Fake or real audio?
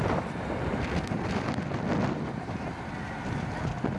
real